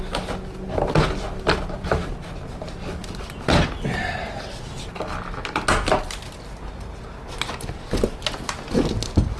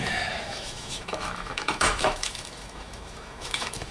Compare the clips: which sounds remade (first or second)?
second